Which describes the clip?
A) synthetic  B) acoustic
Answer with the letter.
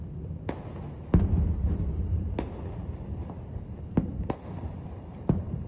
B